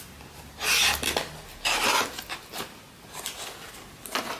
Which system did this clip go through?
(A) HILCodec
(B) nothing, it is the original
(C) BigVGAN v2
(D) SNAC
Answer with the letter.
B